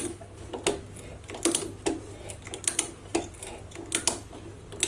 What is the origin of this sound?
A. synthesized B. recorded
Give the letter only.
B